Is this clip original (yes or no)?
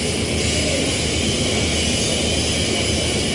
yes